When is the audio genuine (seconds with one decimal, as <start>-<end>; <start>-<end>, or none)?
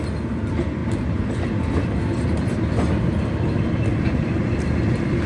0.0-5.3